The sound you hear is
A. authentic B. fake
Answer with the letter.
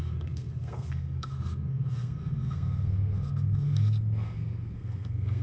B